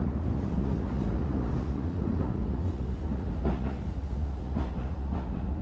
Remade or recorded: remade